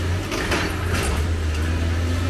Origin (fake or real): real